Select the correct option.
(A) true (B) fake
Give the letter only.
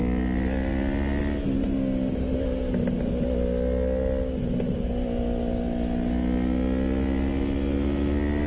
A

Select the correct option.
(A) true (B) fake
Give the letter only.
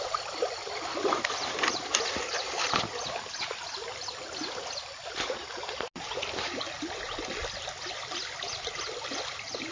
A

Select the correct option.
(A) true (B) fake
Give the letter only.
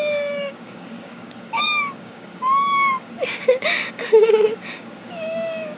B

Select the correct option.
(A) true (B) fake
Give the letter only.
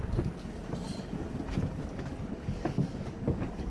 B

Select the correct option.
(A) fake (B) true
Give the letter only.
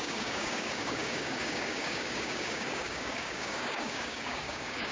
A